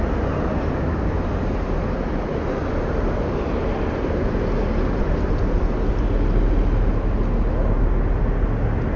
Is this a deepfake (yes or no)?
no